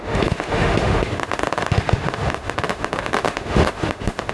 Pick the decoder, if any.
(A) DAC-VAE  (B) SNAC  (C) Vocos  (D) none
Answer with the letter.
A